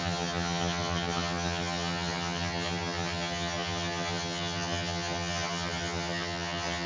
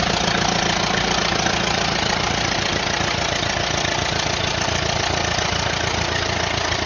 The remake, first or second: first